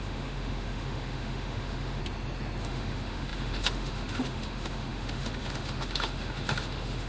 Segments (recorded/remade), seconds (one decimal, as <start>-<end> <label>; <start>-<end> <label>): 0.0-2.0 remade; 2.0-2.6 recorded; 2.6-7.1 remade